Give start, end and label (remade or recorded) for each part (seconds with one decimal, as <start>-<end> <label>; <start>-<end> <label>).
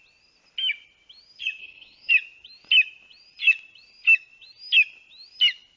0.0-1.6 recorded; 1.6-2.1 remade; 2.1-5.8 recorded